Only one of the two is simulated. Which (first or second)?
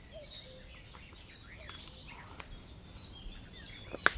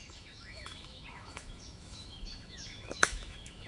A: second